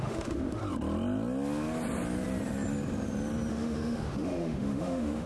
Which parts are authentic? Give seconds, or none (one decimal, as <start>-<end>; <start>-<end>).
0.6-3.5